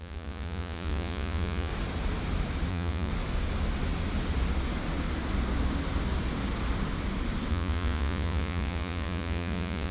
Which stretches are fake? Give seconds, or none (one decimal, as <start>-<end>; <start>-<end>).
0.0-1.7; 2.7-3.1; 7.5-9.9